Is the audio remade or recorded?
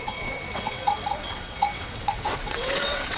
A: remade